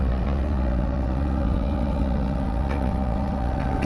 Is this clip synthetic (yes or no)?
yes